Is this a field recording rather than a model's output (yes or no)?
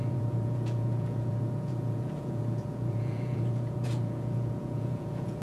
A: no